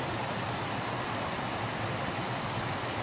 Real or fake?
real